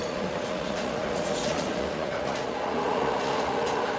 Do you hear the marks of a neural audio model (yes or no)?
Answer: yes